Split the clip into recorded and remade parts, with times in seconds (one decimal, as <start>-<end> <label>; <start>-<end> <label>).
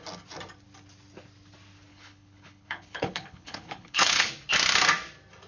0.0-1.9 recorded; 1.9-4.3 remade; 4.3-5.5 recorded